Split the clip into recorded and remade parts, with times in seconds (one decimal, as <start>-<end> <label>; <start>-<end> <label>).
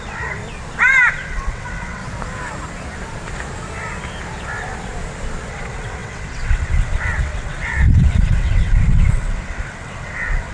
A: 0.0-0.4 remade; 0.4-1.1 recorded; 1.1-2.0 remade; 2.0-5.5 recorded; 5.5-10.5 remade